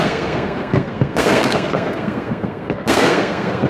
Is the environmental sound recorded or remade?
remade